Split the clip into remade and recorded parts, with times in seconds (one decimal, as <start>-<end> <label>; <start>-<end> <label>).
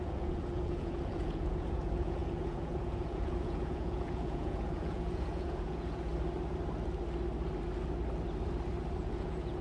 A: 0.0-6.1 remade; 6.1-9.0 recorded; 9.0-9.6 remade